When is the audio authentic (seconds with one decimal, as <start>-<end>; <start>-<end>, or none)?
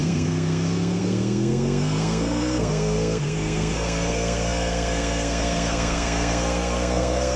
none